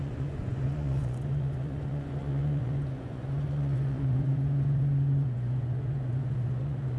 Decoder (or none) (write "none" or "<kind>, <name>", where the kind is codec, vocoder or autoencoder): vocoder, Vocos